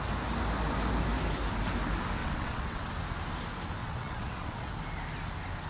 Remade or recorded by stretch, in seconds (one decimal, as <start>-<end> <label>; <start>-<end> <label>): 0.0-2.2 recorded; 2.2-2.9 remade; 2.9-3.8 recorded; 3.8-4.7 remade; 4.7-5.7 recorded